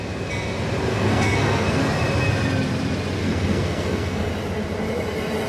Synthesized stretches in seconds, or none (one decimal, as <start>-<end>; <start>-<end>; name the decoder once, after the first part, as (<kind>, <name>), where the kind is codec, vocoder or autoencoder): 0.9-1.8 (codec, SNAC); 3.2-4.3